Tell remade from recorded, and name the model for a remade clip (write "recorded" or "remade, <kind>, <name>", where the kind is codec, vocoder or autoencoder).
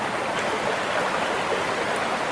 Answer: recorded